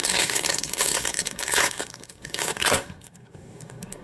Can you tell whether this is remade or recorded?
remade